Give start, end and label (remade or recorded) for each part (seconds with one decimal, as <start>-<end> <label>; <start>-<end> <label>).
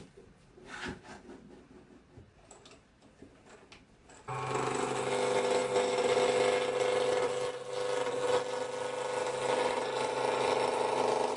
0.0-11.4 recorded